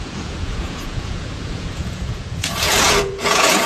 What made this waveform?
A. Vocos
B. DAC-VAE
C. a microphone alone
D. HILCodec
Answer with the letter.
A